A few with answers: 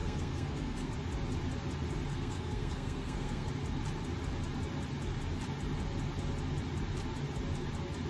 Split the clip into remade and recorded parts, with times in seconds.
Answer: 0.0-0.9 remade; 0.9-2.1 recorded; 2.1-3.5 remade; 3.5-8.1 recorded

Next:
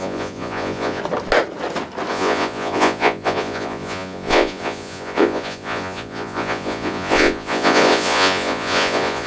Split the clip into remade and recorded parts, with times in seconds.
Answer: 0.0-1.0 remade; 1.0-2.1 recorded; 2.1-9.3 remade

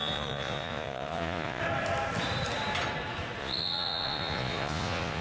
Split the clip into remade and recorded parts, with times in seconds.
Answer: 0.0-1.6 remade; 1.6-3.4 recorded; 3.4-5.2 remade

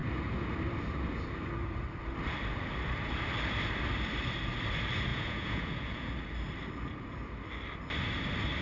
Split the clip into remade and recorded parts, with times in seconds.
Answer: 0.0-5.1 recorded; 5.1-6.1 remade; 6.1-8.6 recorded

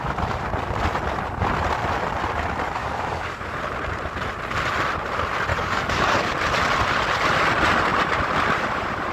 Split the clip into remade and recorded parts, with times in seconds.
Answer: 0.0-2.8 recorded; 2.8-3.6 remade; 3.6-5.5 recorded; 5.5-6.3 remade; 6.3-9.1 recorded

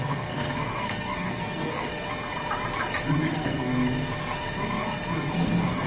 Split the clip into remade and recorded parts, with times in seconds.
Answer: 0.0-1.9 remade; 1.9-3.3 recorded; 3.3-3.7 remade; 3.7-5.3 recorded; 5.3-5.9 remade

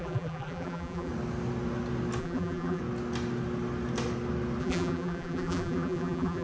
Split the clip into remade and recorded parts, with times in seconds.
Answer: 0.0-1.1 remade; 1.1-2.2 recorded; 2.2-2.8 remade; 2.8-4.6 recorded; 4.6-6.4 remade

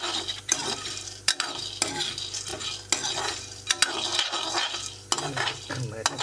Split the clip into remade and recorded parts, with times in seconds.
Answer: 0.0-2.5 remade; 2.5-6.2 recorded